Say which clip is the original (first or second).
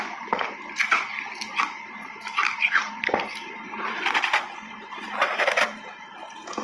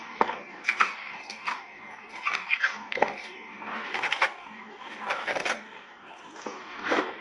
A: first